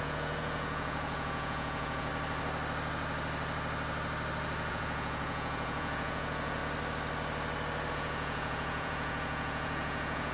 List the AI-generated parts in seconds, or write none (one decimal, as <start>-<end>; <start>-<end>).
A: 0.0-2.1; 4.7-6.6; 7.9-10.3